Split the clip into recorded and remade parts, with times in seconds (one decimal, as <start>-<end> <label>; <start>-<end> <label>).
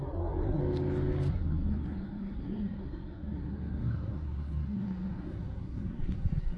0.0-0.6 remade; 0.6-1.3 recorded; 1.3-6.6 remade